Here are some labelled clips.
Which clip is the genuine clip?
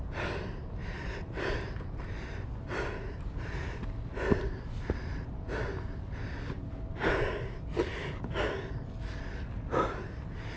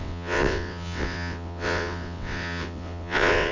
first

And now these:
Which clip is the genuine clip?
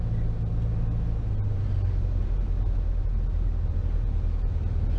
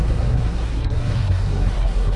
first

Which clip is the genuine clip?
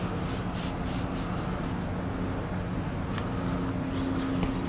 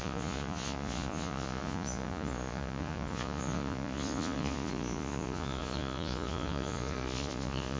first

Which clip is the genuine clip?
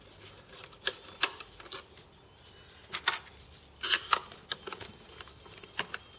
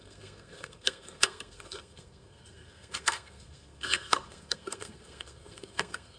first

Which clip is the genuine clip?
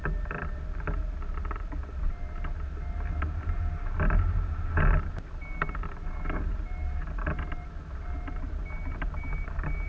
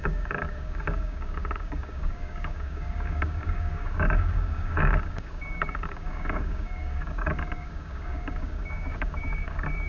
first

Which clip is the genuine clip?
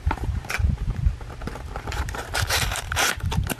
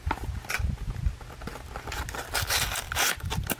second